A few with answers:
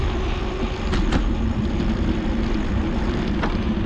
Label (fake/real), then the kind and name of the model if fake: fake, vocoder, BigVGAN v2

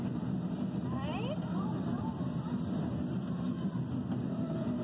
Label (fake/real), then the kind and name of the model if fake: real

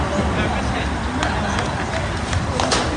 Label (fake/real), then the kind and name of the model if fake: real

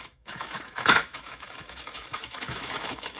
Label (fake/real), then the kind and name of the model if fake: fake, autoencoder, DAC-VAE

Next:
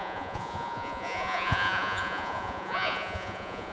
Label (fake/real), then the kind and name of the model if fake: fake, vocoder, Vocos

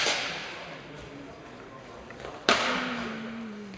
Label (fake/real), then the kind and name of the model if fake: real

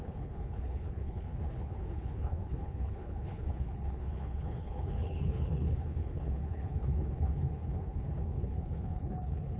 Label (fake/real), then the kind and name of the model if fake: fake, codec, HILCodec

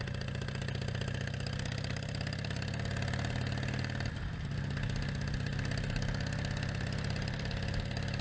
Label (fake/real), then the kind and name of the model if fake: real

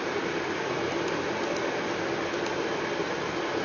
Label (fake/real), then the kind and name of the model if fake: real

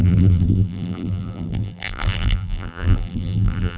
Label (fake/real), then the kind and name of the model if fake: fake, vocoder, BigVGAN v2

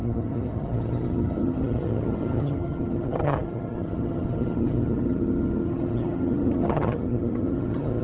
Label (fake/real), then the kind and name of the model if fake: fake, vocoder, HiFi-GAN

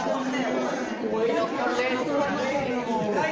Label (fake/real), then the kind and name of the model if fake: real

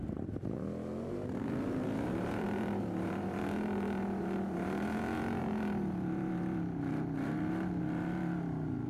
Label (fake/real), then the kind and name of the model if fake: fake, vocoder, BigVGAN v2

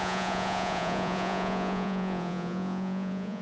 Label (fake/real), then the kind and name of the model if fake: fake, vocoder, Vocos